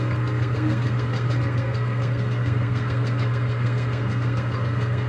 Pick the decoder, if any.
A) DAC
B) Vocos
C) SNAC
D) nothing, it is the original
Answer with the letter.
C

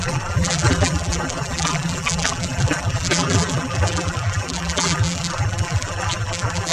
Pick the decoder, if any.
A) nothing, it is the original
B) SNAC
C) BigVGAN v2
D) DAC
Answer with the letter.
C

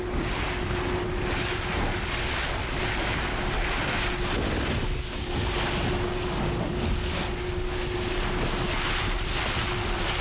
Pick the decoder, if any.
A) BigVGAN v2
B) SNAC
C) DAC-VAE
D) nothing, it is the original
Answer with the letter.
D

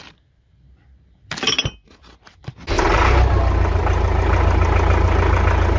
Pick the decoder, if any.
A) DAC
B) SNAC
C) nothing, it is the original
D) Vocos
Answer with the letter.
C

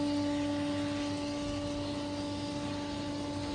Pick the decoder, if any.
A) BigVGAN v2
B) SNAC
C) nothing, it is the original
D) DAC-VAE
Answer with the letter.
C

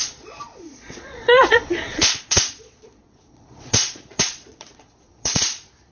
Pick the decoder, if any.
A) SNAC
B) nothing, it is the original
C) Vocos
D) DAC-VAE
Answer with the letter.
C